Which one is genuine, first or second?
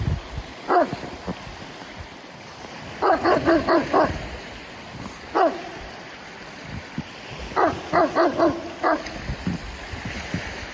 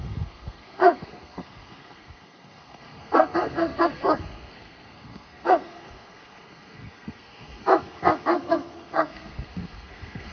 first